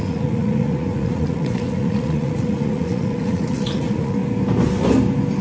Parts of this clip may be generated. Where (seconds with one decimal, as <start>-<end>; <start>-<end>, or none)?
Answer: 0.0-4.2